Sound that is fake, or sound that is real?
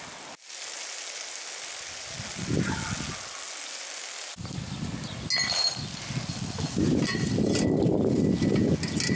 real